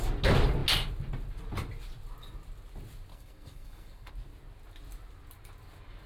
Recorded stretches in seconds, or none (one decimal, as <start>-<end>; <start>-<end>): 0.0-3.1; 4.1-6.1